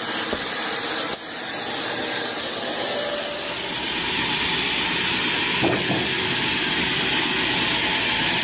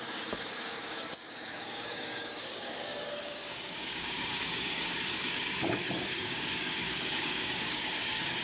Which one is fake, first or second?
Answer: second